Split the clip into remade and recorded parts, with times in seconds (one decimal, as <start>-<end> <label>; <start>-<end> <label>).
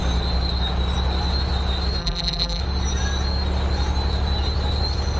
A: 0.0-2.0 recorded; 2.0-2.6 remade; 2.6-5.2 recorded